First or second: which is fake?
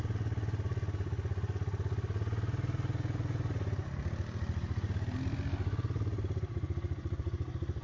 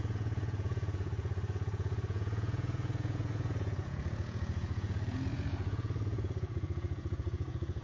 second